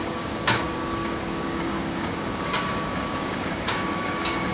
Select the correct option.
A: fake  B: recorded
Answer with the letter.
A